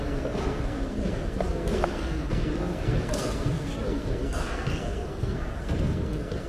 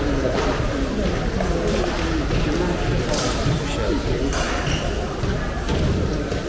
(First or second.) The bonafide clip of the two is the second